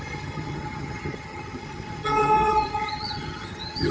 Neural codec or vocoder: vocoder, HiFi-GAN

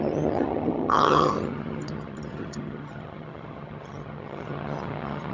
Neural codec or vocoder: vocoder, HiFi-GAN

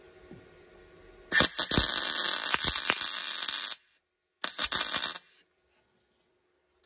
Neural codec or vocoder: none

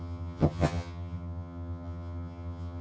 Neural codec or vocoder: vocoder, HiFi-GAN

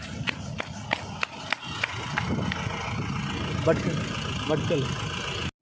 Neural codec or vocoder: none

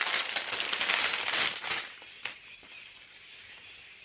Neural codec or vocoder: none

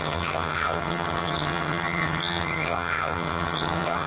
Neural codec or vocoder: vocoder, HiFi-GAN